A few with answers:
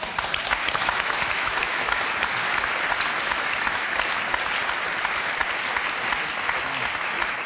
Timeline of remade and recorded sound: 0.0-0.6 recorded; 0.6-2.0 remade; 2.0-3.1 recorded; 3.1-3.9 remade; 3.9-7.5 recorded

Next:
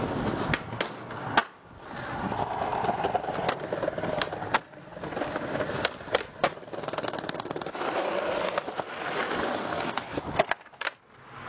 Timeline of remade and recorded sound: 0.0-9.6 recorded; 9.6-10.2 remade; 10.2-11.5 recorded

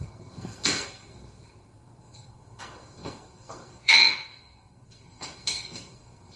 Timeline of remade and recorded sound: 0.0-6.4 remade

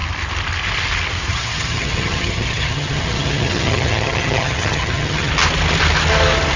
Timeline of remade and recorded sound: 0.0-1.3 recorded; 1.3-5.3 remade; 5.3-6.6 recorded

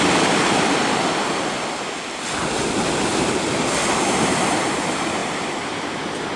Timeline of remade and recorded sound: 0.0-6.4 remade

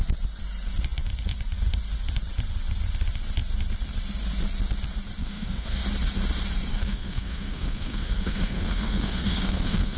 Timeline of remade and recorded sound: 0.0-5.2 recorded; 5.2-5.8 remade; 5.8-6.7 recorded; 6.7-10.0 remade

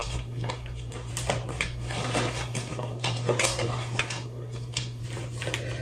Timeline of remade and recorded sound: 0.0-1.1 remade; 1.1-1.5 recorded; 1.5-5.0 remade; 5.0-5.8 recorded

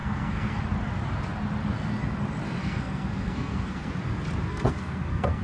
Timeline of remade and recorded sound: 0.0-0.6 remade; 0.6-2.6 recorded; 2.6-3.9 remade; 3.9-4.5 recorded; 4.5-5.4 remade